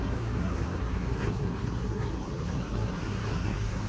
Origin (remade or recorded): remade